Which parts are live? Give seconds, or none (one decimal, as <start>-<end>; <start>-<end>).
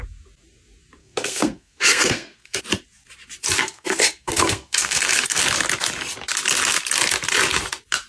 0.0-1.0; 2.6-3.6; 5.4-8.1